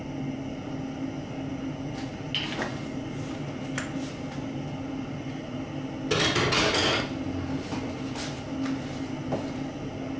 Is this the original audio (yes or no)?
yes